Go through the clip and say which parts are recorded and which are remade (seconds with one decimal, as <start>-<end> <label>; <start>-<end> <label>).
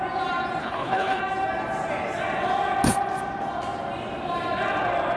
0.0-0.6 recorded; 0.6-1.2 remade; 1.2-5.2 recorded